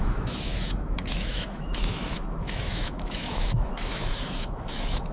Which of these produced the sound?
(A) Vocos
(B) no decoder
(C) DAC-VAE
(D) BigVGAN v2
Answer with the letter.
C